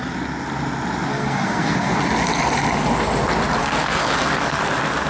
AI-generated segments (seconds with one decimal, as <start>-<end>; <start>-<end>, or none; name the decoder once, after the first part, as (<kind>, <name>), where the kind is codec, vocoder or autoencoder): 1.1-2.0 (codec, SNAC); 3.6-4.6